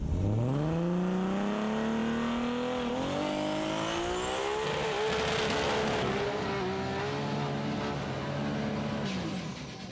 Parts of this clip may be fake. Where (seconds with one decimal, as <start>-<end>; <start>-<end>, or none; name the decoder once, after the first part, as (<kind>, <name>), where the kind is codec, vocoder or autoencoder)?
none